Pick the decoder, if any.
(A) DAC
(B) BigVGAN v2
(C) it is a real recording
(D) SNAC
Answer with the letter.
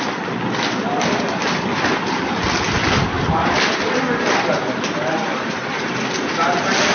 C